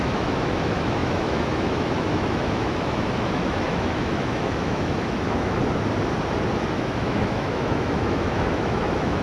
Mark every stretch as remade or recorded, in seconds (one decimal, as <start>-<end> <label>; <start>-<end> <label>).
0.0-5.6 remade; 5.6-6.6 recorded; 6.6-9.2 remade